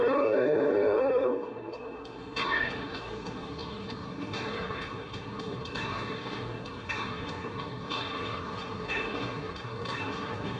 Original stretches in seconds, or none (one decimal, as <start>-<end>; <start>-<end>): none